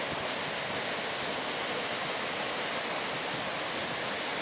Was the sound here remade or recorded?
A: recorded